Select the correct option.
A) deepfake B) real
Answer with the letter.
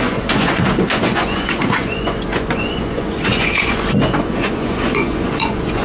A